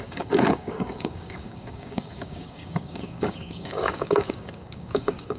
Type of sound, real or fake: fake